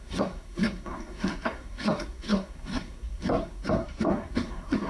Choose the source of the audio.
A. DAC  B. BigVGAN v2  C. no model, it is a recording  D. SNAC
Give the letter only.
D